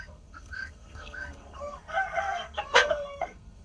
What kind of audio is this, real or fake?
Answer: fake